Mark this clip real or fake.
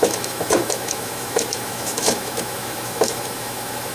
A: fake